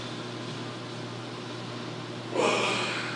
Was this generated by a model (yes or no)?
no